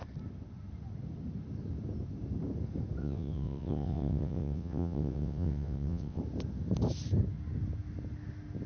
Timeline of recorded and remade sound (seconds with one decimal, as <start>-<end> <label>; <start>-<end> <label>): 0.0-3.0 recorded; 3.0-6.2 remade; 6.2-8.7 recorded